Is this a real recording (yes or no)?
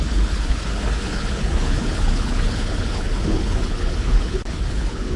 no